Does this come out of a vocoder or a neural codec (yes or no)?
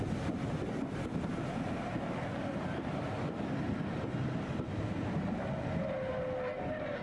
no